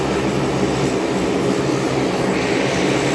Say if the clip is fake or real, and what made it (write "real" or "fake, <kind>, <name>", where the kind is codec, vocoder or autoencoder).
real